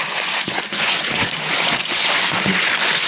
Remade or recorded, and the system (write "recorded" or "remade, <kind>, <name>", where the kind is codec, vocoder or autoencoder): remade, vocoder, Vocos